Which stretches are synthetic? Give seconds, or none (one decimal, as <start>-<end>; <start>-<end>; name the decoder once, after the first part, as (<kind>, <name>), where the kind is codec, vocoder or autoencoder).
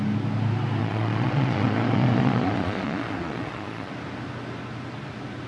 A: 0.8-3.9 (vocoder, Vocos)